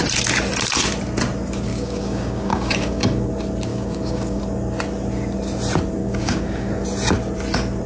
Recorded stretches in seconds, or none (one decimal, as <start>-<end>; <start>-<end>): 0.0-1.7; 3.3-3.7; 4.4-6.0; 6.7-7.9